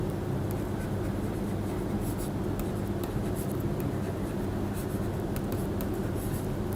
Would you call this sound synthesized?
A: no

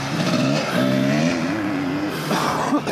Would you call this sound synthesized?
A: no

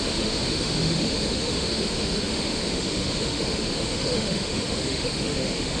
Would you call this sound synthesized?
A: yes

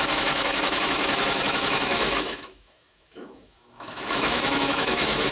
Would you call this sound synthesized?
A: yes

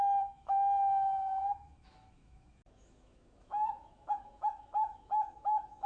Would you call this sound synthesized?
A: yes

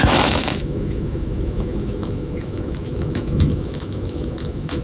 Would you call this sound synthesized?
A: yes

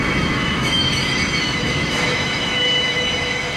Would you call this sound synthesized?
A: yes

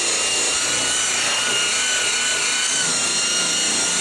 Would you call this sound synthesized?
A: no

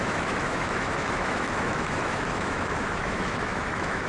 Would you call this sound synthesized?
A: yes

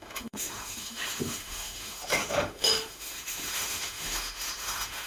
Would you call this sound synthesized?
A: yes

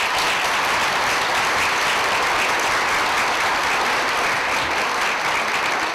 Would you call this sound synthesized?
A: no